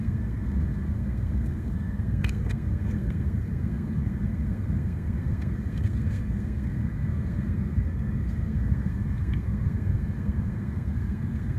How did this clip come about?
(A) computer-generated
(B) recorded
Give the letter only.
A